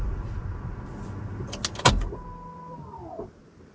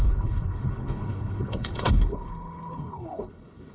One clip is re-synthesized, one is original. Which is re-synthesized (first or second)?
second